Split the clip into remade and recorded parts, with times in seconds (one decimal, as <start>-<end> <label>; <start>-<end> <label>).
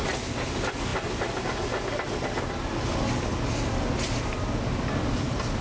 0.0-5.6 recorded